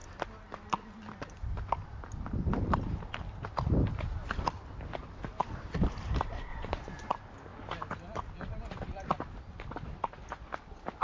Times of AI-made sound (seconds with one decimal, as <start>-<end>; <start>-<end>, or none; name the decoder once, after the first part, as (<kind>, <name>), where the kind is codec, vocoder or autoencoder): 6.5-7.1 (vocoder, Vocos)